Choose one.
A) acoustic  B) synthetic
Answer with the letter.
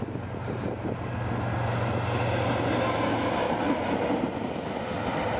A